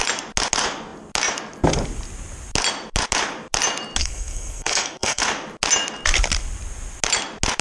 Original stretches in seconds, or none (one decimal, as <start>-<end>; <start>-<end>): 0.0-4.0; 5.2-7.6